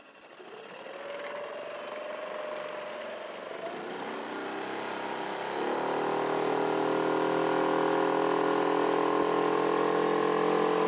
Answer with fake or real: real